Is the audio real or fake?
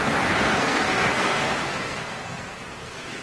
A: fake